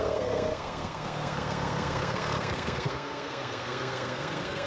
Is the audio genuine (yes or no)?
no